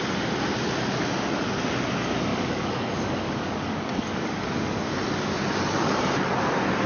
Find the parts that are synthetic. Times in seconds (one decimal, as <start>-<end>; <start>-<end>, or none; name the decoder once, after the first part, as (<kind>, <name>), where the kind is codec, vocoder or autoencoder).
2.3-4.9 (codec, DAC)